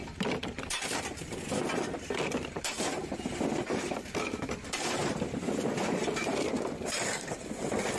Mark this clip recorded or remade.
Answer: remade